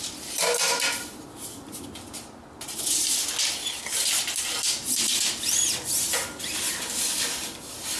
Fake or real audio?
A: real